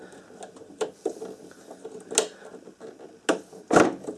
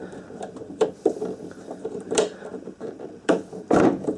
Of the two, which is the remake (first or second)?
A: second